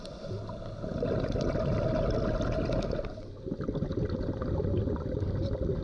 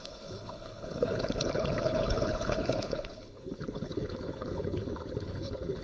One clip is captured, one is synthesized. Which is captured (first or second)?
first